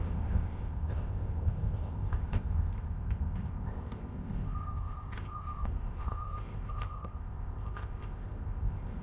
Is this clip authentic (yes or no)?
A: no